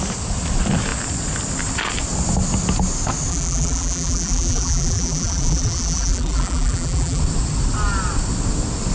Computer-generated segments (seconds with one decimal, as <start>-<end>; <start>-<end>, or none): 3.3-7.2